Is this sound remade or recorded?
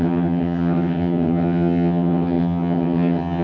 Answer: remade